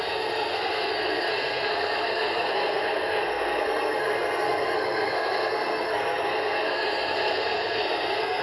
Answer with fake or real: fake